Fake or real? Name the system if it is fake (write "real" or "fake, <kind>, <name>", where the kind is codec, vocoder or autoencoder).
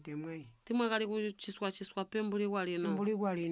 real